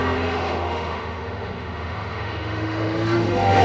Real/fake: fake